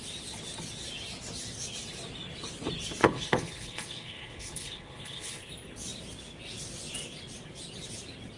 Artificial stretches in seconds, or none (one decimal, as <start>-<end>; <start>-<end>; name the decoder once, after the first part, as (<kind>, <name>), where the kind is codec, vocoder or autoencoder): 3.0-5.5 (codec, HILCodec)